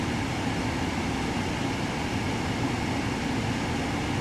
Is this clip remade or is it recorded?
recorded